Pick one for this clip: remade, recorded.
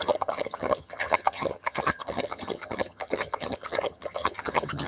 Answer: remade